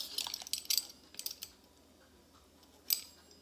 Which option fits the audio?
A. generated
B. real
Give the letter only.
B